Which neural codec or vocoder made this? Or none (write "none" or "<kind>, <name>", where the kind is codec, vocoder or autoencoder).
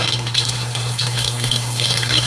codec, SNAC